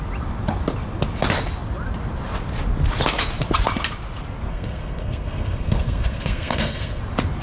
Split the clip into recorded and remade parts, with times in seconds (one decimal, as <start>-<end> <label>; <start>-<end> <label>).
0.0-4.5 recorded; 4.5-7.0 remade; 7.0-7.4 recorded